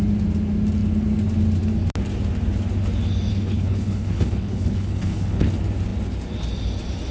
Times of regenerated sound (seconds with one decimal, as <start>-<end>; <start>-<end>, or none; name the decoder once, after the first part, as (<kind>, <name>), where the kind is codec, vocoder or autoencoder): 3.3-5.5 (codec, HILCodec)